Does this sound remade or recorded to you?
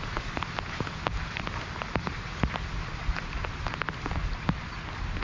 recorded